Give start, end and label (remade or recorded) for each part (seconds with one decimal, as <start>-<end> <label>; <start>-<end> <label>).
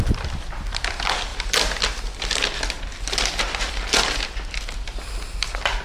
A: 0.0-5.8 recorded